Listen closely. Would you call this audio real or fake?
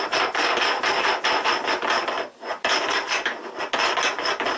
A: real